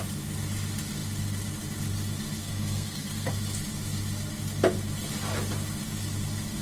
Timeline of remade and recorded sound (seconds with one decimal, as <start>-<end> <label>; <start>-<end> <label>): 0.0-2.4 recorded; 2.4-3.3 remade; 3.3-6.6 recorded